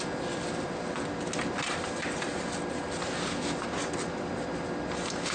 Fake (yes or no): no